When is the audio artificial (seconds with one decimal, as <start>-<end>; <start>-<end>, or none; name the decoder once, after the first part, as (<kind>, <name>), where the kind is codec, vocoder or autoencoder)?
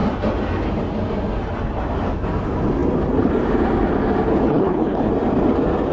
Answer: 4.3-5.1 (codec, HILCodec)